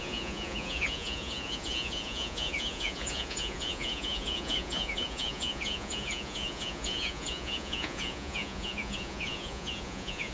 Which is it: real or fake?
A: fake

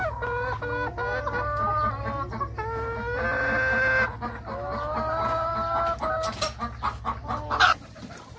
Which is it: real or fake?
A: real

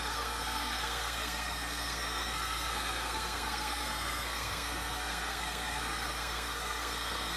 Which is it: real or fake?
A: fake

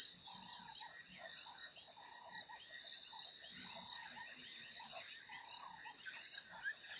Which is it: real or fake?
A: real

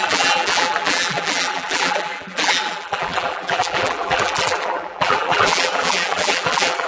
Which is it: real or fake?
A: fake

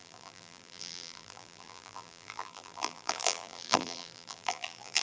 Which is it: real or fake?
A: fake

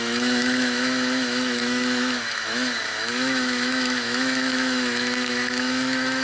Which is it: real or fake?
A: fake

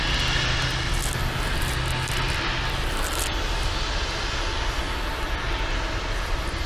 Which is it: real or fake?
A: real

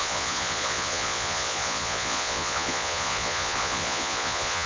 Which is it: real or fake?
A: fake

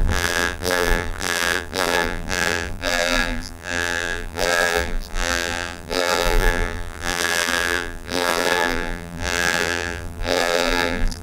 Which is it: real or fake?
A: fake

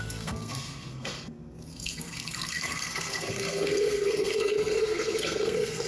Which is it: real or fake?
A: fake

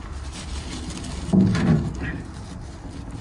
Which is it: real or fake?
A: fake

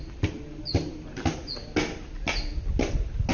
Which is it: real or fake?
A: real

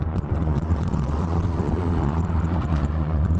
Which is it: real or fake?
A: fake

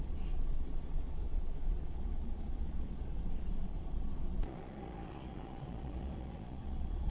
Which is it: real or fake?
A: fake